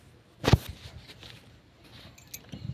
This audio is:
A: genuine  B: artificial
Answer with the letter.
A